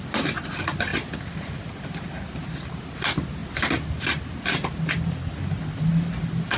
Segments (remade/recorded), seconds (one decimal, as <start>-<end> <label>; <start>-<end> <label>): 0.0-6.6 recorded